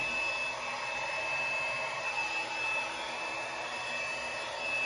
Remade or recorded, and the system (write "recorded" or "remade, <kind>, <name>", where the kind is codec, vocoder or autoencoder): recorded